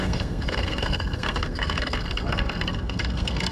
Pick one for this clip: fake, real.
fake